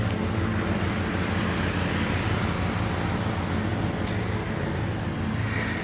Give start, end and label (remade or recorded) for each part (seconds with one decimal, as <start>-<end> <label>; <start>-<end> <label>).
0.0-5.8 recorded